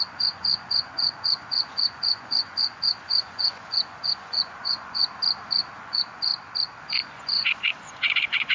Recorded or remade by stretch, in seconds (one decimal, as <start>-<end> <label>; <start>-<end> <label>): 0.0-5.0 remade; 5.0-5.8 recorded; 5.8-6.3 remade; 6.3-6.8 recorded; 6.8-8.5 remade